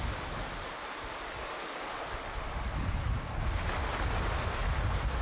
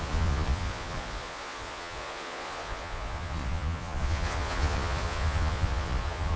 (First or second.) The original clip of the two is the first